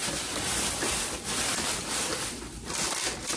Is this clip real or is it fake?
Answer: real